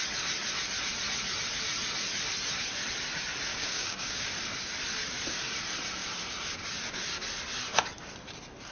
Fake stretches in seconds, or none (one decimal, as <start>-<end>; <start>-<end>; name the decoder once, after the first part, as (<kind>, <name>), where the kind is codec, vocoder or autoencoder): 3.5-4.3 (codec, DAC)